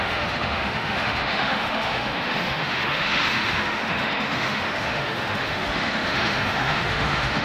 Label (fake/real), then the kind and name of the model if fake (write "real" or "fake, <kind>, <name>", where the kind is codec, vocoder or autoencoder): fake, autoencoder, DAC-VAE